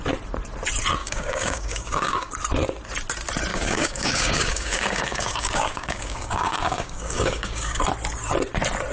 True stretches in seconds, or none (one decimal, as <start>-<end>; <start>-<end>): 0.0-1.0; 2.3-3.5; 7.8-8.9